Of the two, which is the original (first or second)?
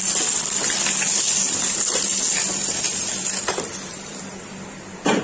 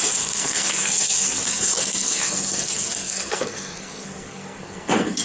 first